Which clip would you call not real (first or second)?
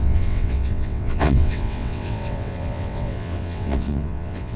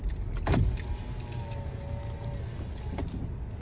first